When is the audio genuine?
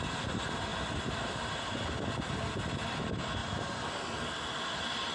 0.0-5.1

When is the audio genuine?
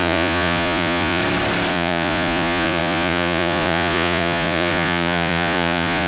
1.2-1.7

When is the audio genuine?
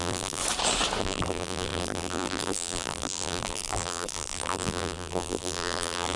0.4-1.0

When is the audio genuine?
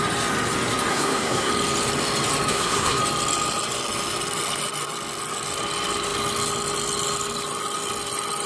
0.0-0.9; 1.5-2.5; 3.0-8.5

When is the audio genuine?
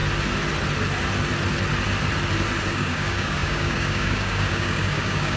0.0-2.7